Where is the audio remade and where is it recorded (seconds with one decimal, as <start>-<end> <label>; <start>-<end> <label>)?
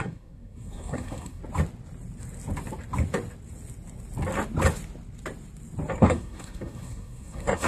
0.0-1.4 remade; 1.4-6.0 recorded; 6.0-7.7 remade